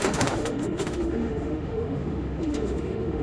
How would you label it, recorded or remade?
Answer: remade